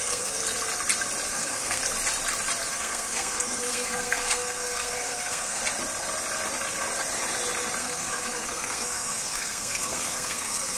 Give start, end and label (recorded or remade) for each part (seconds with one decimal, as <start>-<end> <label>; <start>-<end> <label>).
0.0-0.4 remade; 0.4-1.3 recorded; 1.3-1.8 remade; 1.8-2.7 recorded; 2.7-5.6 remade; 5.6-7.8 recorded; 7.8-10.8 remade

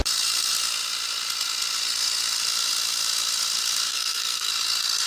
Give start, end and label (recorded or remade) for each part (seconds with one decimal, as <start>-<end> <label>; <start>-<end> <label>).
0.0-3.9 recorded; 3.9-4.5 remade; 4.5-5.1 recorded

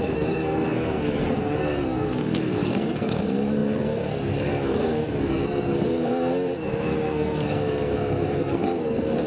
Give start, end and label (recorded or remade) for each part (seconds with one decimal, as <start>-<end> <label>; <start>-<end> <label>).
0.0-9.3 remade

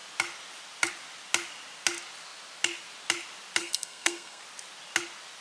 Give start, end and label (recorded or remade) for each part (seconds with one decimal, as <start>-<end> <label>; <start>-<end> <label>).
0.0-3.6 recorded; 3.6-4.4 remade; 4.4-5.4 recorded

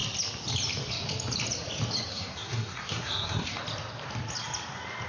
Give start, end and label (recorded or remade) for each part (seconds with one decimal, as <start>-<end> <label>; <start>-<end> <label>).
0.0-2.1 recorded; 2.1-3.6 remade; 3.6-5.1 recorded

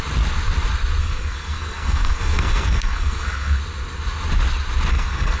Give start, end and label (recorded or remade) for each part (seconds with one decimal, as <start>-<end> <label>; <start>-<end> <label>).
0.0-1.0 recorded; 1.0-3.6 remade; 3.6-4.9 recorded; 4.9-5.4 remade